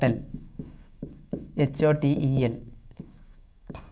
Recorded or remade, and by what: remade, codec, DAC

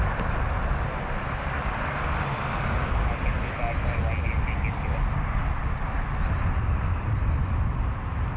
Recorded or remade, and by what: recorded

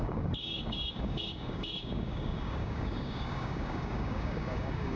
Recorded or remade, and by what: remade, codec, DAC